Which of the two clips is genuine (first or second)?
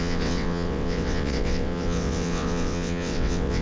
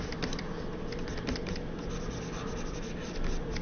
second